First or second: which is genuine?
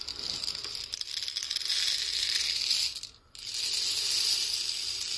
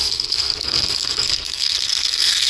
first